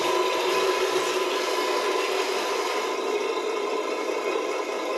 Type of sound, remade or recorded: recorded